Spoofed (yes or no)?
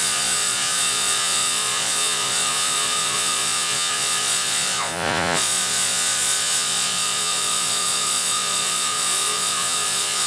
yes